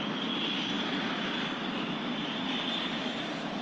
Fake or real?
real